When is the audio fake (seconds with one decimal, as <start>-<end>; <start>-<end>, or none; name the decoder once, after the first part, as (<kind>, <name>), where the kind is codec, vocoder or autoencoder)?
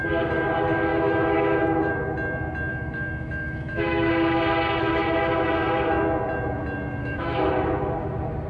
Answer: 0.9-1.9 (autoencoder, DAC-VAE); 2.7-4.1; 7.0-7.5